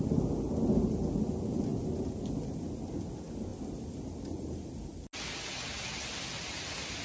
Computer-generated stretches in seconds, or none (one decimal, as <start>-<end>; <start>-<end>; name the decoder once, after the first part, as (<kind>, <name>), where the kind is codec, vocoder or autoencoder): none